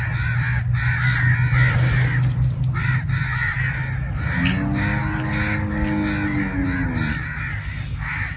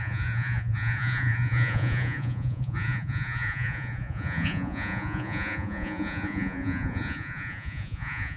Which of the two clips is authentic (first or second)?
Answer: first